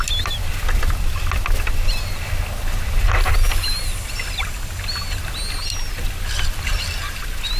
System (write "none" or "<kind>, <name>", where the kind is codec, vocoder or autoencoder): none